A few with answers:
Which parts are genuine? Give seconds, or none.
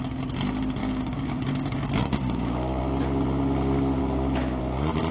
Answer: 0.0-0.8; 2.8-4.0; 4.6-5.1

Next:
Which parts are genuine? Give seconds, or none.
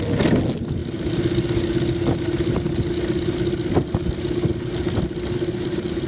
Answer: 0.0-6.1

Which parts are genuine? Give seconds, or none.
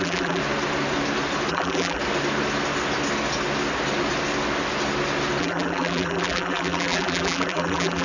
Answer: 0.4-1.5; 2.0-5.4